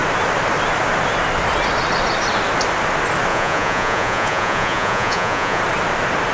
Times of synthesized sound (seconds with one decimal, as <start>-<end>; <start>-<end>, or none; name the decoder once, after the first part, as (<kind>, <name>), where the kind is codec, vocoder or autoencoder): 3.3-5.6 (vocoder, Vocos)